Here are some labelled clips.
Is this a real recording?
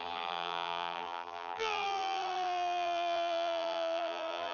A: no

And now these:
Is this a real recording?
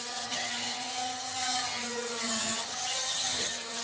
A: no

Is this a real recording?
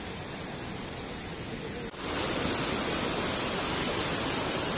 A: yes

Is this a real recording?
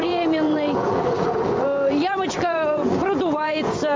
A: no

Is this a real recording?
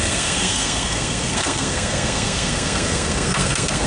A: no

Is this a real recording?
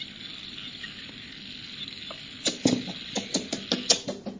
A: yes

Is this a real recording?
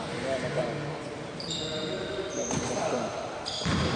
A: yes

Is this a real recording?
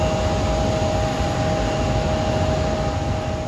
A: yes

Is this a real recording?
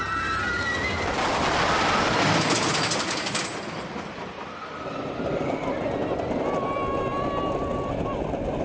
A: yes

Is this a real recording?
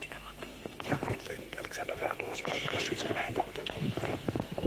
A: no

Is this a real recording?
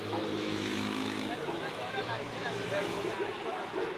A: no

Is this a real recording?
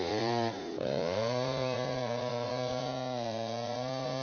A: no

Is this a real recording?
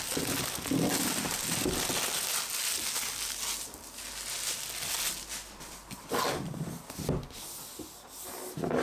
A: yes